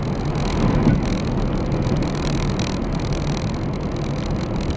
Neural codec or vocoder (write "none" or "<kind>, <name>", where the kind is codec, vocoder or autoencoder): none